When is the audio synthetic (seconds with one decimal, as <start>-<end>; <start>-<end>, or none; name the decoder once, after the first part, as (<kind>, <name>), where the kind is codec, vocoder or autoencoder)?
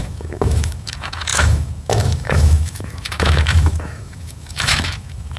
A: 0.0-5.4 (autoencoder, DAC-VAE)